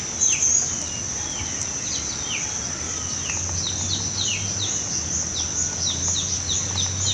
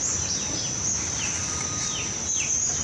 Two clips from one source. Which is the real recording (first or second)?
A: first